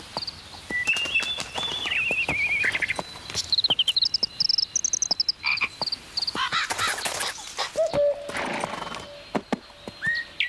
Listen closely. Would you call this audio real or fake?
real